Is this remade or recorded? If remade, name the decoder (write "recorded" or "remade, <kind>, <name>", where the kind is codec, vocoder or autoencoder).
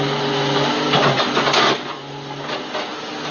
recorded